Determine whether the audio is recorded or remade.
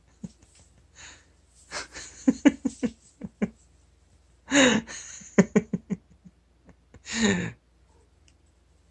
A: recorded